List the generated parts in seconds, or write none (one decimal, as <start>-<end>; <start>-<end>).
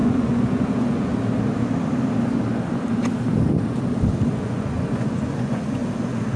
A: 0.0-1.1; 4.3-5.8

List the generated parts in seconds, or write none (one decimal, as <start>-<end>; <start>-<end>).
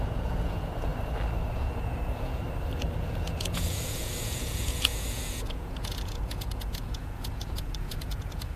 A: 0.0-0.9; 1.5-2.4; 3.0-8.6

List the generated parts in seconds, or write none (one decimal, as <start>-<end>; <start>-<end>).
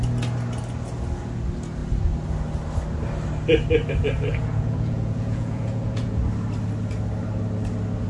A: 4.3-6.2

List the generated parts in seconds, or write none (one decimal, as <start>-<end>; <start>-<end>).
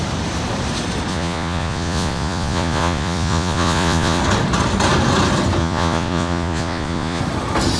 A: 1.1-4.2; 5.6-7.2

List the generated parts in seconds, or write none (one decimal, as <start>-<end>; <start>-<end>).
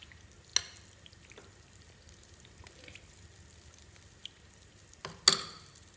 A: none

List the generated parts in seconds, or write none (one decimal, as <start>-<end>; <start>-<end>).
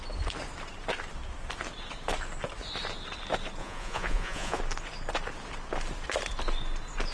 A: 3.6-4.6